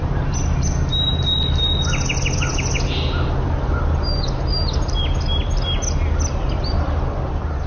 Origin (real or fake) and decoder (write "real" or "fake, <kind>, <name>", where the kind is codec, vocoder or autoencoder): real